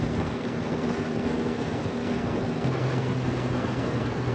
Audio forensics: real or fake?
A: fake